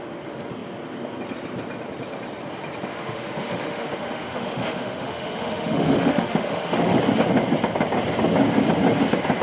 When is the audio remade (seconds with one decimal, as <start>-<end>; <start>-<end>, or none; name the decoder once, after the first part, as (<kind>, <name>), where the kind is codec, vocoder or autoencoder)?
2.9-7.0 (autoencoder, DAC-VAE)